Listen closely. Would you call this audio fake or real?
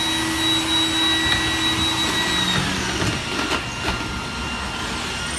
real